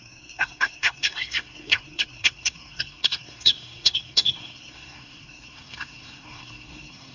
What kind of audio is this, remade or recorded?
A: remade